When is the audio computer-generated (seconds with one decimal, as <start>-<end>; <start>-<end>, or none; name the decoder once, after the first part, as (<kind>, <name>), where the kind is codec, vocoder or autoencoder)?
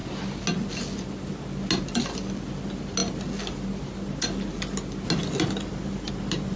none